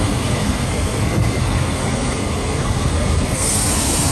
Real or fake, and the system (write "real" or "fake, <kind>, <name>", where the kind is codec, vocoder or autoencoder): fake, codec, SNAC